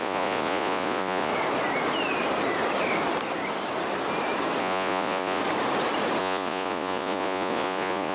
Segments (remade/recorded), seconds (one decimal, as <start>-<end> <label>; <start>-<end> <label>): 0.0-1.3 remade; 1.3-4.6 recorded; 4.6-5.4 remade; 5.4-6.2 recorded; 6.2-8.1 remade